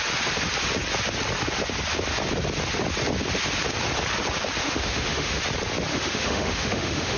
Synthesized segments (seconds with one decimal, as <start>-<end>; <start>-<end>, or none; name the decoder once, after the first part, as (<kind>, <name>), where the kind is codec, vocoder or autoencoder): 4.6-5.4 (autoencoder, DAC-VAE); 5.9-7.2